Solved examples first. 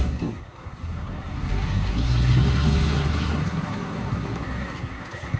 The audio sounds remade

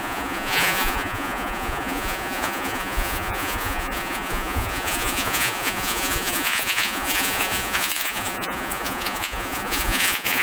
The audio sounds remade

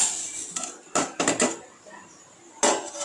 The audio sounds recorded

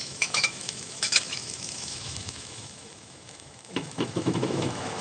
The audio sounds remade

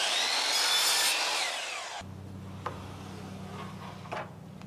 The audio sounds recorded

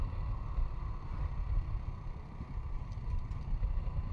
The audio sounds recorded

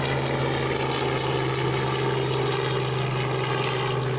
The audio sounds recorded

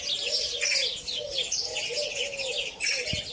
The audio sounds recorded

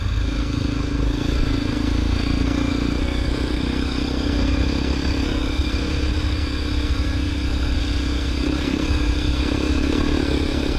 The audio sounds remade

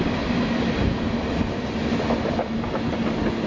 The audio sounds recorded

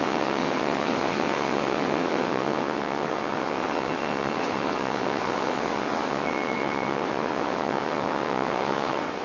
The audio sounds remade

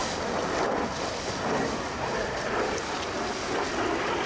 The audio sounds recorded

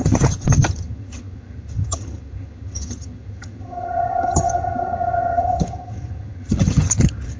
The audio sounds remade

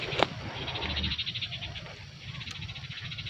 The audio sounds recorded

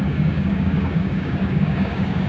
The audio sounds remade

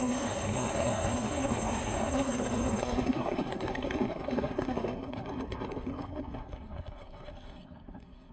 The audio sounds remade